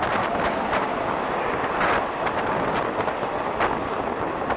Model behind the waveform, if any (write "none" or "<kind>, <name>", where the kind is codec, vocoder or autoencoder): none